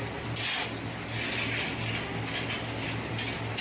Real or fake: real